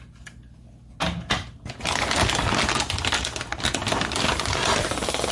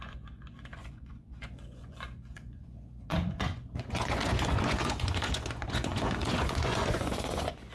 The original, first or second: first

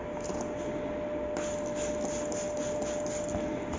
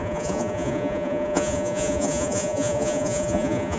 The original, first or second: first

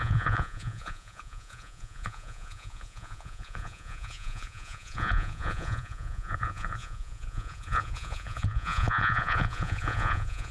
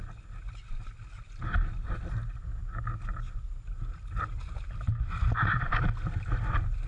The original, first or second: second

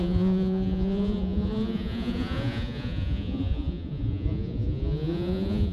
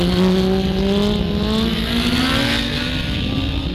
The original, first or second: second